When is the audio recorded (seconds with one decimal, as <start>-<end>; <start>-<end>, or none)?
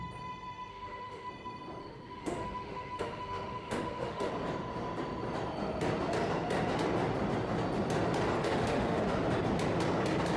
0.0-0.7; 1.3-1.8; 4.3-8.4; 9.0-10.4